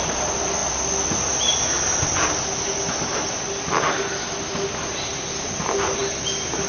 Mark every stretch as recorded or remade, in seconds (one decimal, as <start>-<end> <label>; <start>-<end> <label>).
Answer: 0.0-6.7 recorded